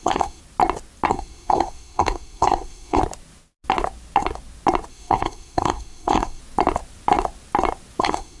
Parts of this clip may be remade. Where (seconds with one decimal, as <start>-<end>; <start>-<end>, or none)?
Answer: 0.0-0.4; 1.1-3.0; 4.9-6.4; 8.0-8.4